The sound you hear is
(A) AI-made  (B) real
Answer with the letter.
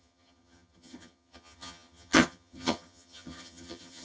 A